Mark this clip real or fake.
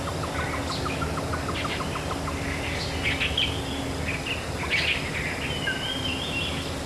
real